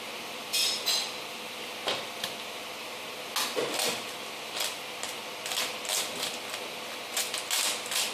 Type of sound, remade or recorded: recorded